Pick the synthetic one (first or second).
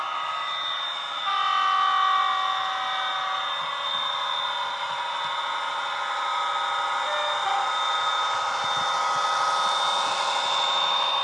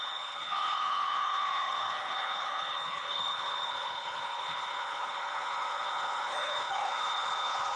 second